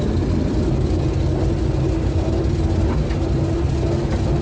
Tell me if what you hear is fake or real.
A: real